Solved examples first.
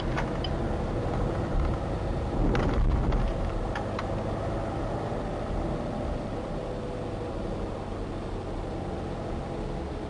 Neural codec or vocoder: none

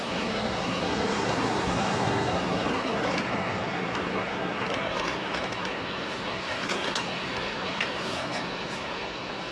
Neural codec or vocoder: codec, SNAC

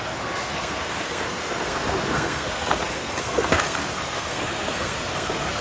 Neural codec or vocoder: codec, SNAC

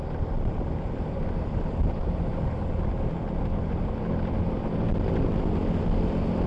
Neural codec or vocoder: none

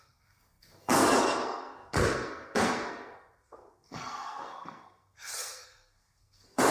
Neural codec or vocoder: codec, SNAC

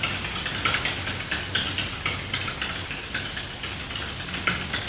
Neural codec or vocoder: none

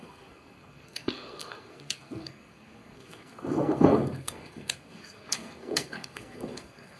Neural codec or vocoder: codec, SNAC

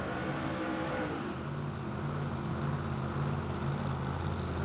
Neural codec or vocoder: none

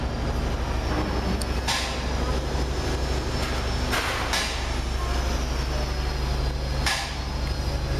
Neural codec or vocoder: none